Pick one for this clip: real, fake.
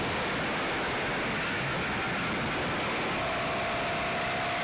real